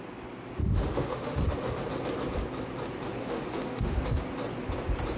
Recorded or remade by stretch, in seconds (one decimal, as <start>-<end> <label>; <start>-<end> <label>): 0.0-0.6 recorded; 0.6-1.4 remade; 1.4-3.2 recorded; 3.2-4.0 remade; 4.0-5.2 recorded